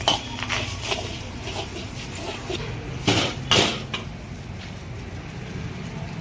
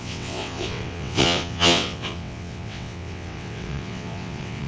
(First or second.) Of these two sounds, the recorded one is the first